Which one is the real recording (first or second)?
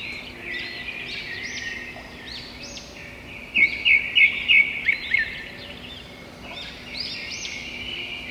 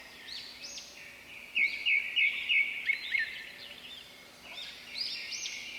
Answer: second